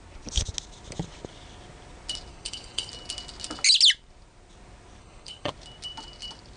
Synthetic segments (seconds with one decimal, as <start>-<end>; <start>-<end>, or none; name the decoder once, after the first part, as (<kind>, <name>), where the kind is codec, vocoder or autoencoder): 2.3-2.9 (codec, HILCodec); 5.0-5.5